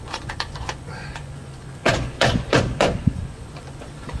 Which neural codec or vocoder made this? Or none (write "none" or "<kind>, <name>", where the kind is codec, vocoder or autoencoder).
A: vocoder, Vocos